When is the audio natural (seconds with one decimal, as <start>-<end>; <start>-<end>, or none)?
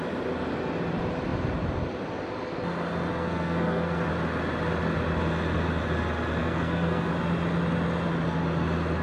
0.0-3.1; 4.1-6.4; 7.1-9.0